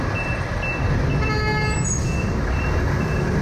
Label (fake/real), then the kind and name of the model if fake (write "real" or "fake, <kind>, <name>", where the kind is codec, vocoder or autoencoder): real